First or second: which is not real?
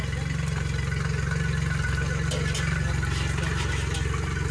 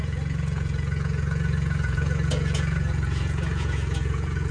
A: second